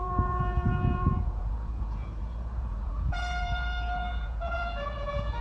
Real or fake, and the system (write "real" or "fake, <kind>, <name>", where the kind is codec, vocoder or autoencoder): fake, vocoder, Vocos